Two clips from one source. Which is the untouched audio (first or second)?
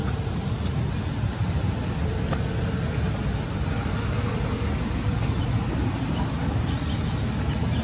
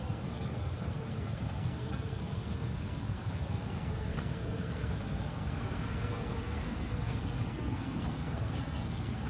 first